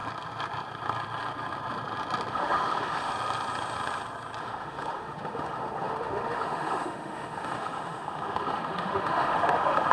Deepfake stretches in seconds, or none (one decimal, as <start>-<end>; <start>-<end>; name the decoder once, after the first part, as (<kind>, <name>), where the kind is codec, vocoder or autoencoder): 2.3-3.1 (autoencoder, DAC-VAE); 4.4-9.9